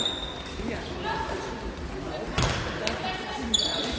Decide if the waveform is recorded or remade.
recorded